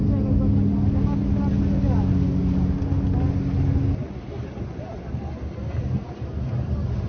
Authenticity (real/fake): real